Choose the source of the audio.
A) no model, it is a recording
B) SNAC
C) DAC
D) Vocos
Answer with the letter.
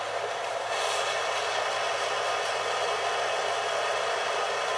A